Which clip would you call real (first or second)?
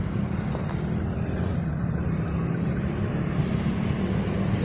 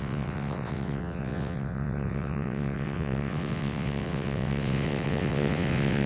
first